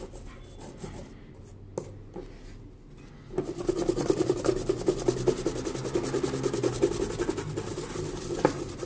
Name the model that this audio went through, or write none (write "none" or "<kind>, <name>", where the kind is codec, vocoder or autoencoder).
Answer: none